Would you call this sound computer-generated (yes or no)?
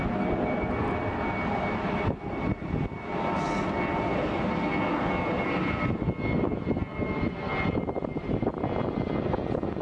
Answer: no